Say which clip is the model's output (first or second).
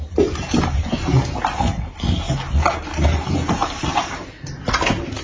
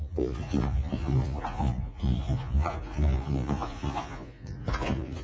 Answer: second